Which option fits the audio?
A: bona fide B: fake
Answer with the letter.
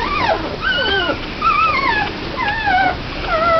A